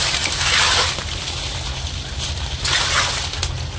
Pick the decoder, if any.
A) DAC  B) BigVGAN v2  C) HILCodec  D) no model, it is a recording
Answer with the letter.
D